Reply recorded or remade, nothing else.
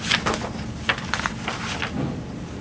recorded